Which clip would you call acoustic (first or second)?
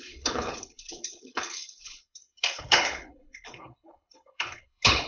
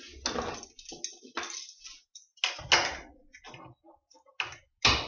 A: second